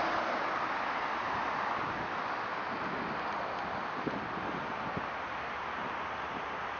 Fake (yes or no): no